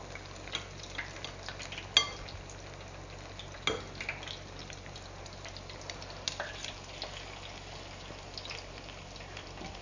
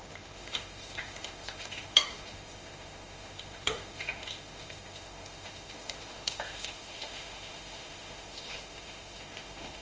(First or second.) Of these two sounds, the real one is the first